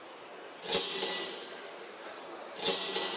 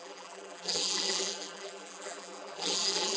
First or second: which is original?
first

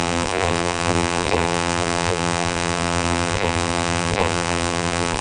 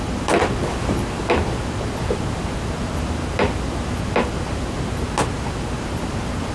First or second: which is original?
second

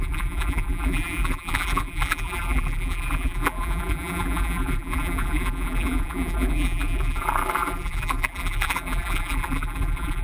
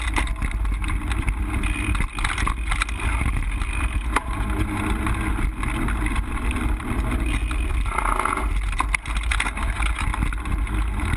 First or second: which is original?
second